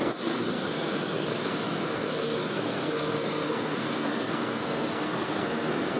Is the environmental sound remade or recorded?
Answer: remade